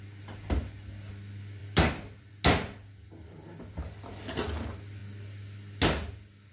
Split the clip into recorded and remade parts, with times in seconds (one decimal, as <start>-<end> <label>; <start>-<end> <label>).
0.0-1.6 recorded; 1.6-2.3 remade; 2.3-6.5 recorded